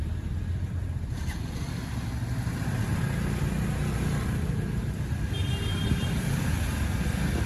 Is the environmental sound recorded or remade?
recorded